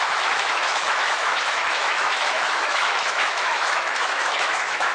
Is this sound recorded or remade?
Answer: remade